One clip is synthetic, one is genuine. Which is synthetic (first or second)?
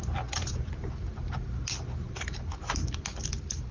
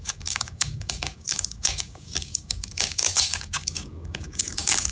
second